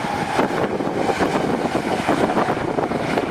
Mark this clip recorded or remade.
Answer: remade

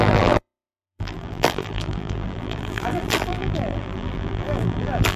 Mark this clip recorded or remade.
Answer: remade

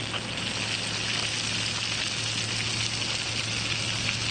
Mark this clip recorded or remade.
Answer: recorded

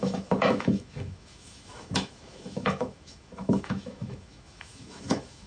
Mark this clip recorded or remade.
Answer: remade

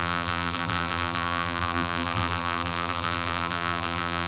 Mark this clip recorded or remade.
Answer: remade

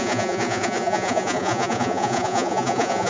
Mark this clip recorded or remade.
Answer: remade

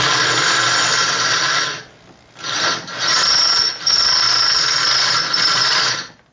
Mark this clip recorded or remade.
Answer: recorded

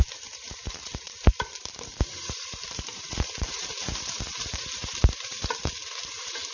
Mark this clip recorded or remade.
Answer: remade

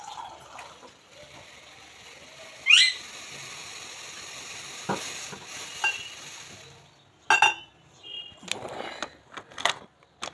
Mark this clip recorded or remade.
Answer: recorded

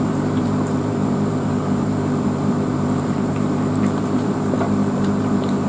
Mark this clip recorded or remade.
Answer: remade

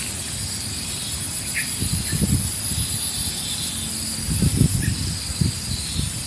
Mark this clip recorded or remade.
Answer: recorded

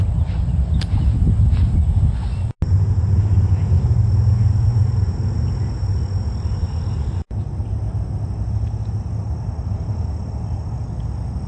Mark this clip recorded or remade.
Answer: recorded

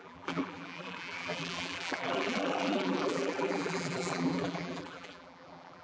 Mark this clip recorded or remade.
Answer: remade